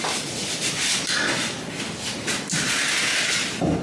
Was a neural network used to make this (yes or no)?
no